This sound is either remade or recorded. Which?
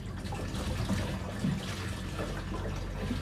recorded